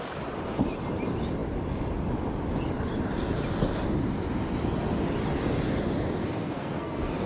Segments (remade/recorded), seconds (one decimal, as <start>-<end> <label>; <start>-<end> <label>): 0.0-6.2 recorded; 6.2-7.3 remade